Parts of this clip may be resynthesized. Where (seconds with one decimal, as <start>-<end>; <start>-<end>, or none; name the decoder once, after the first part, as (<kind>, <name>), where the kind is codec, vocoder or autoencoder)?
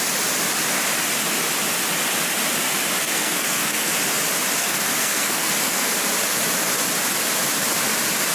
3.0-3.9 (codec, SNAC); 4.6-5.9